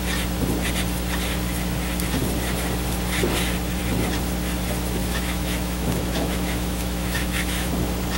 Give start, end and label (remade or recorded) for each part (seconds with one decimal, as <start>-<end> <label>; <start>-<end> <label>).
0.0-5.0 recorded; 5.0-7.7 remade; 7.7-8.2 recorded